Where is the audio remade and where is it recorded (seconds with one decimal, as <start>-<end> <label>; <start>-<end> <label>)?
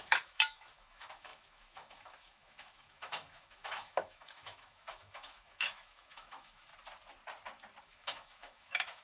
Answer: 0.0-6.7 remade; 6.7-7.8 recorded; 7.8-9.0 remade